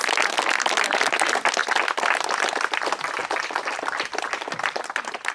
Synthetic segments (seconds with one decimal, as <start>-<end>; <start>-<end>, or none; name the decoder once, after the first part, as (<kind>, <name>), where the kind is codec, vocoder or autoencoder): 1.6-2.5 (vocoder, BigVGAN v2); 3.2-4.8